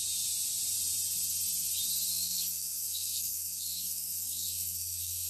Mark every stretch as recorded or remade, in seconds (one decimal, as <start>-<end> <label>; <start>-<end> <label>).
0.0-2.1 recorded; 2.1-5.3 remade